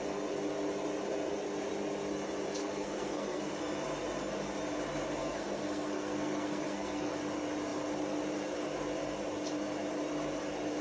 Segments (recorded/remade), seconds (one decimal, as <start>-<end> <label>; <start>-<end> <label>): 0.0-2.6 recorded; 2.6-3.5 remade; 3.5-5.2 recorded; 5.2-7.1 remade; 7.1-10.8 recorded